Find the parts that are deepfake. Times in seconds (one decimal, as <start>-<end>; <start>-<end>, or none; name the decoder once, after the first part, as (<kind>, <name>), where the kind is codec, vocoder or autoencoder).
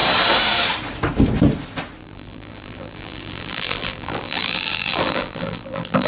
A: 2.0-6.1 (vocoder, BigVGAN v2)